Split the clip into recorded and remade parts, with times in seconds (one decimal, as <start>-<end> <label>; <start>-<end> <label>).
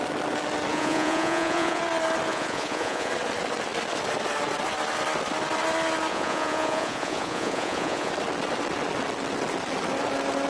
0.0-0.7 recorded; 0.7-1.8 remade; 1.8-2.3 recorded; 2.3-3.1 remade; 3.1-6.1 recorded; 6.1-8.1 remade; 8.1-10.5 recorded